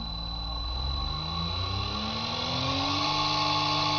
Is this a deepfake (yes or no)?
no